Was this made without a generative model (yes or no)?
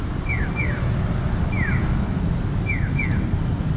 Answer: yes